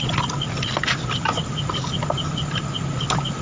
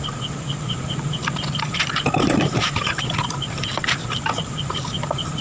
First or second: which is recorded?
first